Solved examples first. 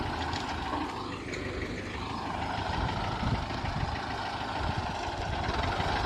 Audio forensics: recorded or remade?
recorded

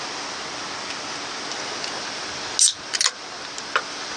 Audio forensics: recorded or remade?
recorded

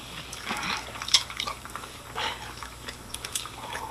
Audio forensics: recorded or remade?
remade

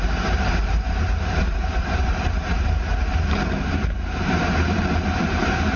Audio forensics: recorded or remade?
remade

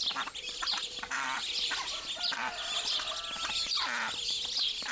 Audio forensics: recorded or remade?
recorded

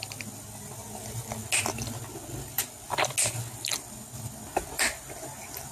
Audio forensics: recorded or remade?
recorded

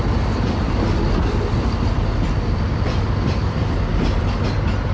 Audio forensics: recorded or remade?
recorded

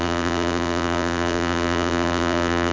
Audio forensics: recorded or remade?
remade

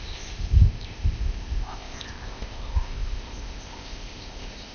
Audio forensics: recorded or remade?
remade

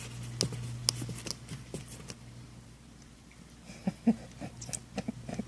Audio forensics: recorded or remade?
recorded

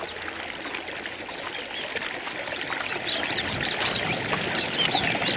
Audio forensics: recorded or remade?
recorded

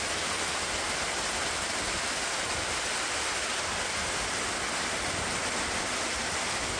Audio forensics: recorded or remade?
recorded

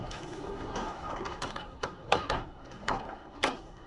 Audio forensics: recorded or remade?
remade